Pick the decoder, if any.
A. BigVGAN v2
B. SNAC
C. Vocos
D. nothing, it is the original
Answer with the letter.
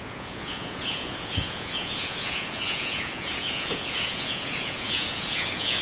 C